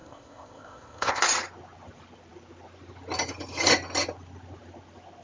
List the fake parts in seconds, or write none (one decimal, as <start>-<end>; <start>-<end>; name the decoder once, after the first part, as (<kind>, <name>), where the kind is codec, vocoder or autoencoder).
0.0-1.2 (codec, ZipCodec)